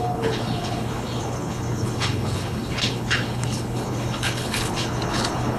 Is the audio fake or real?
fake